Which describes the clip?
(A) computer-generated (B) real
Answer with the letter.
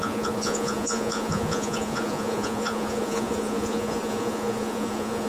A